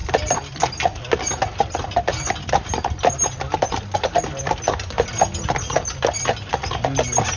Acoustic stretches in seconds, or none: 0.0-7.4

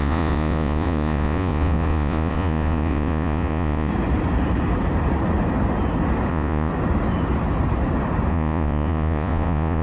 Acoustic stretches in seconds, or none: 3.9-6.3; 6.7-8.3